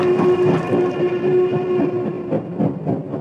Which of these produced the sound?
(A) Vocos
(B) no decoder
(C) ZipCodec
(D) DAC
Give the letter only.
B